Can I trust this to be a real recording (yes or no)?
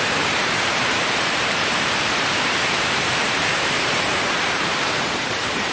no